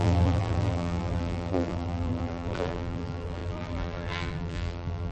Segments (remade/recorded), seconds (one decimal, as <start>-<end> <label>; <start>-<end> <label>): 0.0-5.1 remade